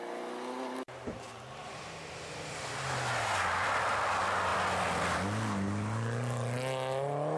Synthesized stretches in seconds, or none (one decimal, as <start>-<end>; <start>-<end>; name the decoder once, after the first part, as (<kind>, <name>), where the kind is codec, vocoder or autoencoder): none